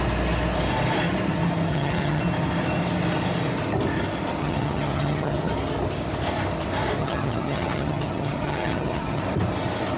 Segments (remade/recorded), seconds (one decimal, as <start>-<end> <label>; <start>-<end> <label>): 0.0-1.7 recorded; 1.7-2.2 remade; 2.2-4.4 recorded; 4.4-5.5 remade; 5.5-7.0 recorded; 7.0-9.2 remade; 9.2-10.0 recorded